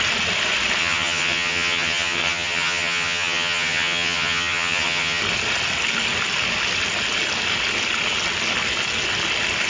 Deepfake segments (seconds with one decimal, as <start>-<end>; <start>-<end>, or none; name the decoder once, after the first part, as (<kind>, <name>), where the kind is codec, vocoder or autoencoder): 0.8-5.2 (vocoder, HiFi-GAN)